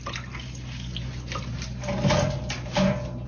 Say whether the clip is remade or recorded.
recorded